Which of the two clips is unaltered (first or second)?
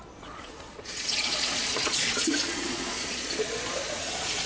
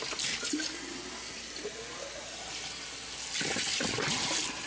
second